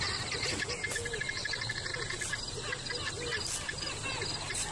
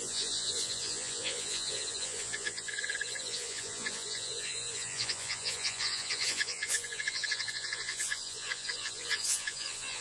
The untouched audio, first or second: first